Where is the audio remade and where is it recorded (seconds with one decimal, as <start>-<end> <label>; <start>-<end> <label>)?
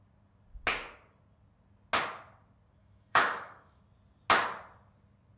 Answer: 0.0-2.8 recorded; 2.8-3.8 remade; 3.8-5.4 recorded